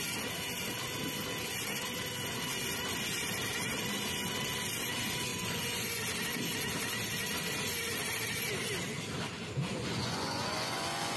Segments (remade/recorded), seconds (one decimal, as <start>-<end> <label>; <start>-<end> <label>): 0.0-5.3 recorded; 5.3-6.0 remade; 6.0-9.7 recorded; 9.7-11.2 remade